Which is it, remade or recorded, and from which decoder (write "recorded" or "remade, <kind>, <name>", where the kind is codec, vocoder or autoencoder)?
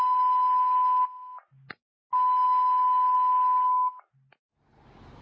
recorded